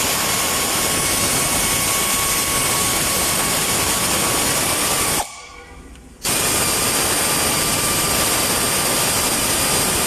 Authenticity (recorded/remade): recorded